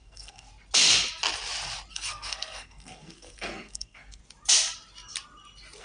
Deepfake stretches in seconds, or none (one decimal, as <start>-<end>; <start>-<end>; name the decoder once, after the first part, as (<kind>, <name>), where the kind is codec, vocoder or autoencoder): 0.0-0.5 (codec, SNAC); 1.9-4.2